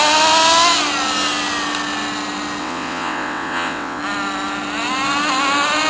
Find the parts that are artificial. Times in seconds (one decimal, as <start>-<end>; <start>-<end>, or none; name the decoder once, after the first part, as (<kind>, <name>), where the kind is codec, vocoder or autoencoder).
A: 2.6-4.0 (vocoder, WaveNeXt)